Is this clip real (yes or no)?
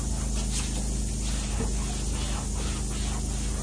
yes